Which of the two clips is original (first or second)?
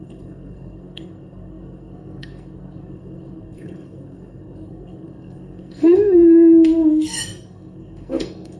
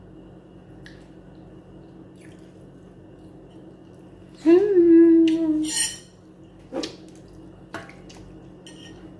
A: second